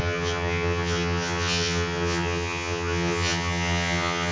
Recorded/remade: remade